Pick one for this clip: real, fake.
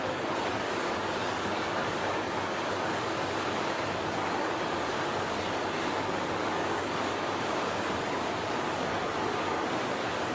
fake